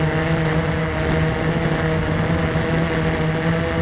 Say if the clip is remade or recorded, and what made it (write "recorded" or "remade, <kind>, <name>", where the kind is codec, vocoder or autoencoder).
recorded